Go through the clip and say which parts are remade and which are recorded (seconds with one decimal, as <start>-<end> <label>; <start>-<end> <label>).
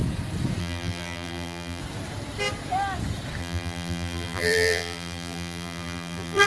0.0-0.6 recorded; 0.6-1.8 remade; 1.8-3.4 recorded; 3.4-6.5 remade